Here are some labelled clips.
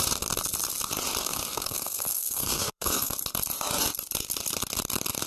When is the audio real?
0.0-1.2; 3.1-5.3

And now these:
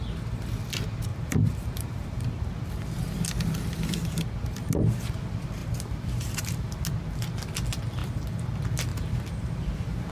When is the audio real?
0.0-1.1; 2.3-5.6; 6.7-8.0; 8.5-8.9; 9.5-10.1

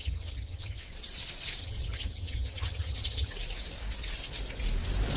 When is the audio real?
0.8-1.6; 3.3-5.2

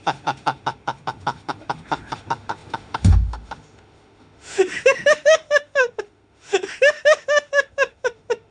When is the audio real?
none

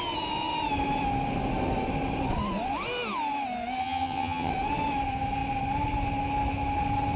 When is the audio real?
0.0-3.8; 4.5-7.2

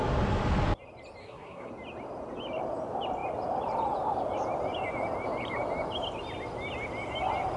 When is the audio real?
0.0-1.2; 1.7-7.6

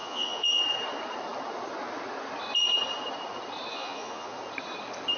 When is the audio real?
0.6-3.7; 4.4-5.2